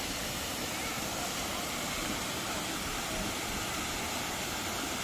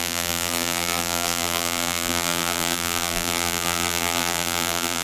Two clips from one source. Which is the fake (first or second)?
second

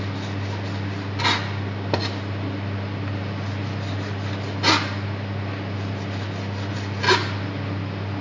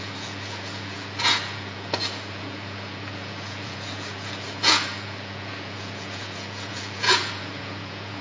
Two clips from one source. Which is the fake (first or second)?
second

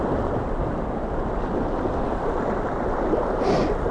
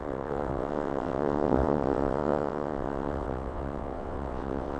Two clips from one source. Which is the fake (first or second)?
second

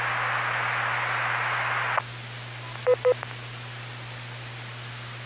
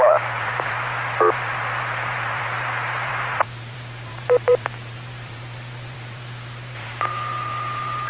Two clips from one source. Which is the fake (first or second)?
second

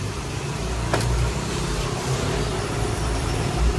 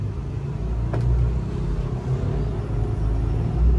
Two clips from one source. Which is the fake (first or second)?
first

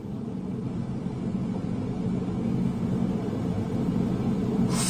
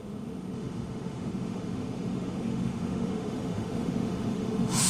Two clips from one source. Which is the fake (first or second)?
second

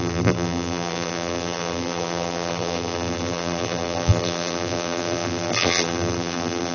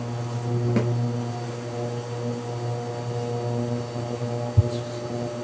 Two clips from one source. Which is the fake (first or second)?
first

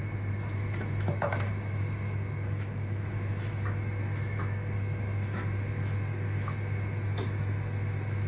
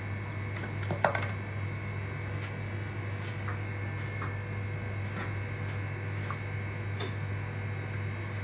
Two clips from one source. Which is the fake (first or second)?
first